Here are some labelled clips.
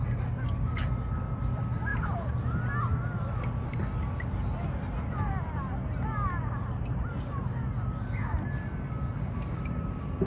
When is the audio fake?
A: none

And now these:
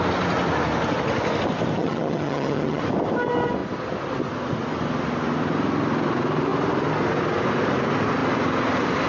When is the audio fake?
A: 1.8-2.8 (vocoder, HiFi-GAN)

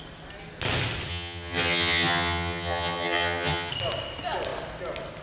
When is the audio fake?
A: 1.1-3.7 (vocoder, HiFi-GAN)

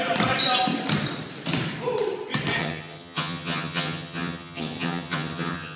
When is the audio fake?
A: 2.6-5.8 (vocoder, HiFi-GAN)